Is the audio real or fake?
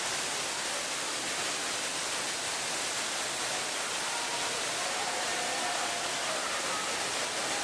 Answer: real